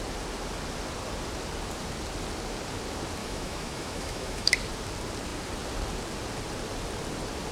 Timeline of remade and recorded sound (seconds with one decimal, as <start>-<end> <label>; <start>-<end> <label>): 0.0-3.2 recorded; 3.2-4.5 remade; 4.5-7.5 recorded